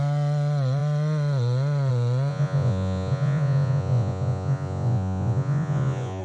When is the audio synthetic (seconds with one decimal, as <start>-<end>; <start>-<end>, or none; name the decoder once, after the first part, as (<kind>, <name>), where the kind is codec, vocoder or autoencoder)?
2.3-6.2 (vocoder, Vocos)